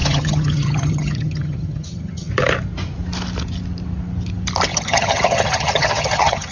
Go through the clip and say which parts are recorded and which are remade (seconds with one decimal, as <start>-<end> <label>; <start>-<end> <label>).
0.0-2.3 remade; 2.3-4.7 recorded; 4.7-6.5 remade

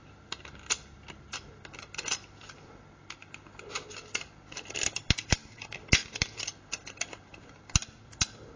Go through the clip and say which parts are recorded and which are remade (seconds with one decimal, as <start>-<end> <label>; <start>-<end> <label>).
0.0-8.6 recorded

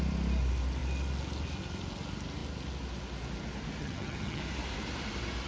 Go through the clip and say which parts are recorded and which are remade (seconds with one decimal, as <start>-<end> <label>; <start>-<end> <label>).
0.0-3.8 recorded; 3.8-4.4 remade; 4.4-5.5 recorded

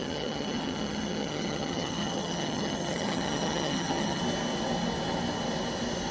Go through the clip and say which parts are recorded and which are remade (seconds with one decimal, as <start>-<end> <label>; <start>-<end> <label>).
0.0-4.2 remade; 4.2-6.1 recorded